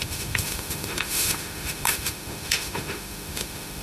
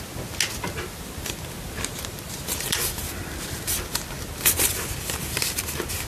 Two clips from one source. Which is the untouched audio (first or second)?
second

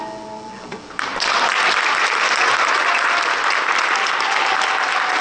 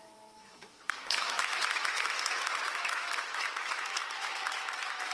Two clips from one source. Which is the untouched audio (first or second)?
first